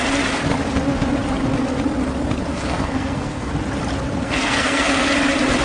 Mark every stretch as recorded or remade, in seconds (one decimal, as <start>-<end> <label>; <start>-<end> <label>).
0.0-2.5 recorded; 2.5-3.5 remade; 3.5-4.2 recorded; 4.2-5.1 remade; 5.1-5.6 recorded